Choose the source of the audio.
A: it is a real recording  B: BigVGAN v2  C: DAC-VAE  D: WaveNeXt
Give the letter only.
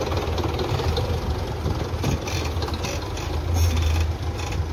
A